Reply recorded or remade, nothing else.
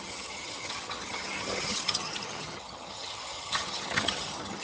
remade